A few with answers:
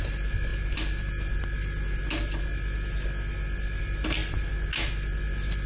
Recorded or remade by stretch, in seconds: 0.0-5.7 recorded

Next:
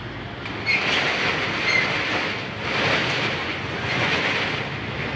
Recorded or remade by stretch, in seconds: 0.0-3.4 recorded; 3.4-4.2 remade; 4.2-5.2 recorded

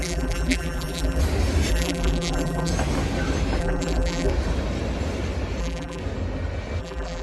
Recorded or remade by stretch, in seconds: 0.0-1.2 remade; 1.2-1.7 recorded; 1.7-2.7 remade; 2.7-3.6 recorded; 3.6-4.3 remade; 4.3-5.6 recorded; 5.6-6.0 remade; 6.0-6.8 recorded; 6.8-7.2 remade

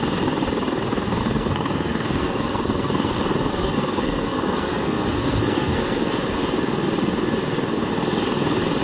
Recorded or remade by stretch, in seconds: 0.0-1.2 recorded; 1.2-3.1 remade; 3.1-3.5 recorded; 3.5-6.1 remade; 6.1-8.8 recorded

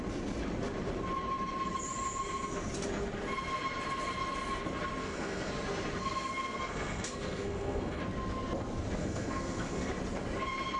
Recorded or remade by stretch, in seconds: 0.0-5.0 recorded; 5.0-5.5 remade; 5.5-6.0 recorded; 6.0-8.0 remade; 8.0-9.0 recorded; 9.0-9.9 remade; 9.9-10.8 recorded

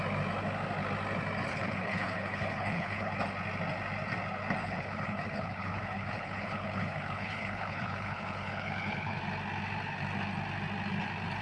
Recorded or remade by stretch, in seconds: 0.0-1.5 recorded; 1.5-3.1 remade; 3.1-4.6 recorded; 4.6-9.2 remade; 9.2-11.4 recorded